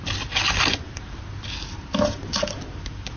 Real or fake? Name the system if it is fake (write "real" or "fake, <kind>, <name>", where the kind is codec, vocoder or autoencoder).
real